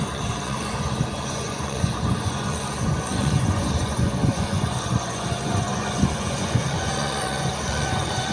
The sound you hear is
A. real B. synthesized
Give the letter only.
B